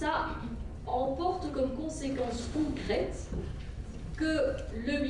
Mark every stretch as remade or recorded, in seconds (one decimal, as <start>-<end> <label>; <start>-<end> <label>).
0.0-2.4 recorded; 2.4-2.9 remade; 2.9-5.1 recorded